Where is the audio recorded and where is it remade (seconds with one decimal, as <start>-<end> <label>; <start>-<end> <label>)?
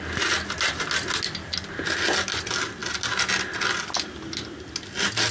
0.0-5.3 recorded